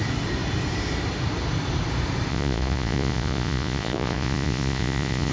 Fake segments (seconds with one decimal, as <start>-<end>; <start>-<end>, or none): 2.3-5.3